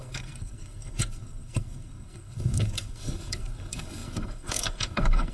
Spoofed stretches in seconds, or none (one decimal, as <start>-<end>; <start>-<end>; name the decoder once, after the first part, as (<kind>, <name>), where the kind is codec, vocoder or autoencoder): 0.0-5.3 (codec, SNAC)